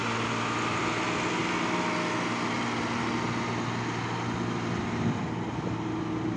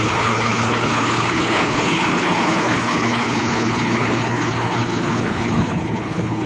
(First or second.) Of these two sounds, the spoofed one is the second